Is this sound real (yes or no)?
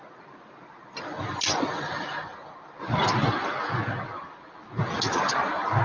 yes